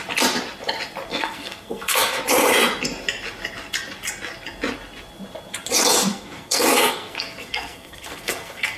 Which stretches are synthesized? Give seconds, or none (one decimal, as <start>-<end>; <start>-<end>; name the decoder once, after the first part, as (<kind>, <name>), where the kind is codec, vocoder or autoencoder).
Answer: 1.1-2.2 (codec, SNAC); 6.1-8.8